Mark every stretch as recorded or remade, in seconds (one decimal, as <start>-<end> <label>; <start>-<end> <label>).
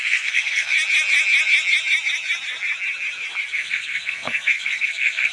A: 0.0-0.7 remade; 0.7-3.5 recorded; 3.5-5.3 remade